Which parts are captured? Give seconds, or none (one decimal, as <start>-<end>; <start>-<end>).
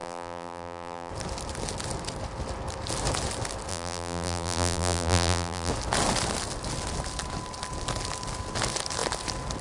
1.1-3.7; 5.7-9.6